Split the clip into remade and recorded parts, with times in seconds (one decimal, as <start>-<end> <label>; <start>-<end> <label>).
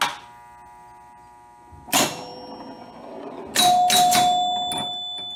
0.0-5.4 recorded